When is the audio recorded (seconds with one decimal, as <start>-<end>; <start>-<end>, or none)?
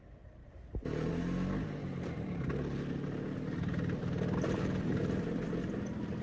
0.0-0.4; 1.1-6.2